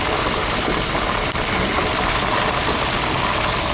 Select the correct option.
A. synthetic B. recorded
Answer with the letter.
A